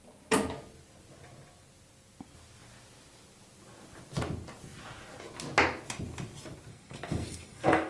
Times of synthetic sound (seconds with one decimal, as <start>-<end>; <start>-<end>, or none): 6.7-7.9